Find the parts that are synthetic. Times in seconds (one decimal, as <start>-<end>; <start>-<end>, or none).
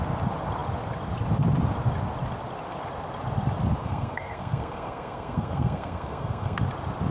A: 3.8-6.6